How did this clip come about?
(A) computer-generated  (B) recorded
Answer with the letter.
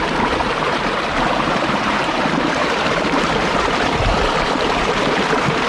A